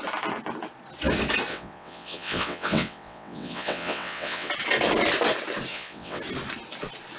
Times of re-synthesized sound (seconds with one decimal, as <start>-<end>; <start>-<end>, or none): 1.5-4.5; 5.7-6.2